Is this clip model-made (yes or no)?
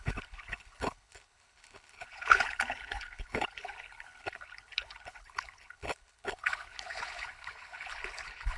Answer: yes